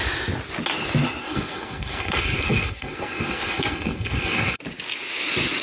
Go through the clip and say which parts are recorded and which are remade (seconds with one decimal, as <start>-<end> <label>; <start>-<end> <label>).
0.0-1.2 recorded; 1.2-4.6 remade; 4.6-5.6 recorded